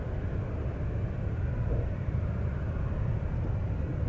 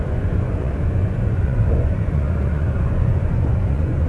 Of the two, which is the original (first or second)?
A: first